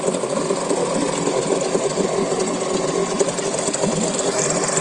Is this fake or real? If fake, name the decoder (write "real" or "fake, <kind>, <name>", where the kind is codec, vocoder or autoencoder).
real